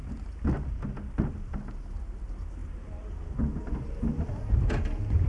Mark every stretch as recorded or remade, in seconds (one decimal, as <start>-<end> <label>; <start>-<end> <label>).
0.0-5.3 recorded